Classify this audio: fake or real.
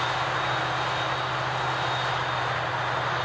real